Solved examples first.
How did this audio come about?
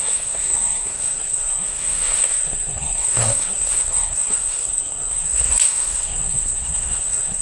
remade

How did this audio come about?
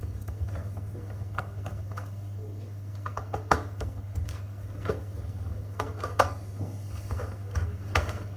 remade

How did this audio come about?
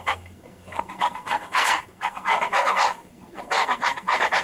remade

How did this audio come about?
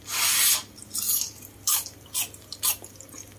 recorded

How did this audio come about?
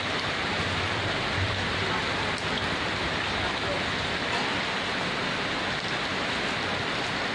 recorded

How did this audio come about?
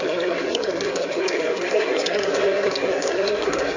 remade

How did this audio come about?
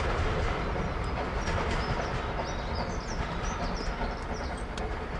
recorded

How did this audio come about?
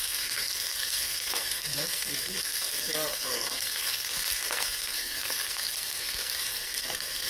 remade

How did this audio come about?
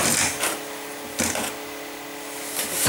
recorded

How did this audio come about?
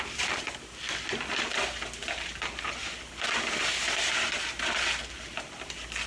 recorded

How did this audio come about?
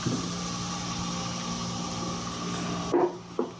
recorded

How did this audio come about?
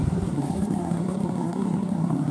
remade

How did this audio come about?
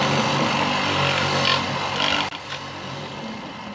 recorded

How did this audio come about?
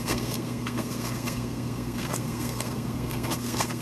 remade